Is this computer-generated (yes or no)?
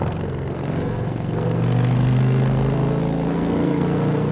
yes